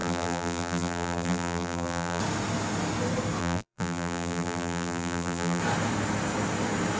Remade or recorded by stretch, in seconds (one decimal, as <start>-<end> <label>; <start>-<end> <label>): 0.0-2.2 remade; 2.2-3.4 recorded; 3.4-5.6 remade; 5.6-7.0 recorded